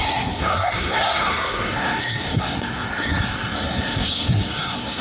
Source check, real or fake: fake